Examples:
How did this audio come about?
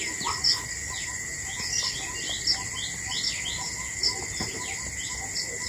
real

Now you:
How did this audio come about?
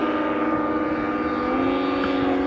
real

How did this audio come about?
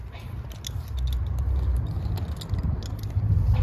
real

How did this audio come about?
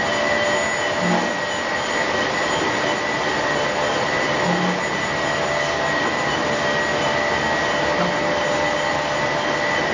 real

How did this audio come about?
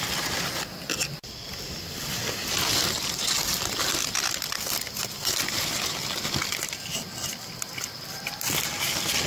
real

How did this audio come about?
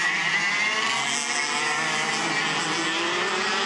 real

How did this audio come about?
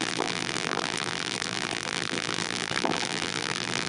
fake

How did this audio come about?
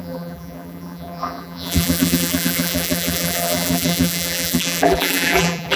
fake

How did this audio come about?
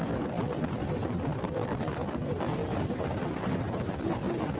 fake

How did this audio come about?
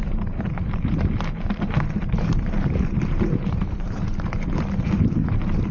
fake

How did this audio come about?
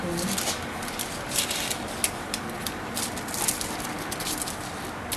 real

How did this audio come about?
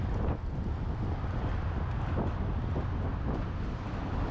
real